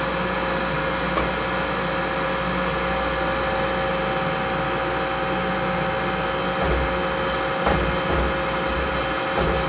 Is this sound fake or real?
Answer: real